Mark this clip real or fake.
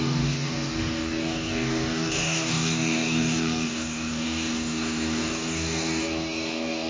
fake